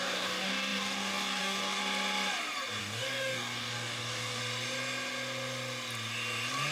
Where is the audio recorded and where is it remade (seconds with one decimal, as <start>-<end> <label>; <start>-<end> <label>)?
0.0-1.8 remade; 1.8-2.8 recorded; 2.8-4.4 remade; 4.4-6.7 recorded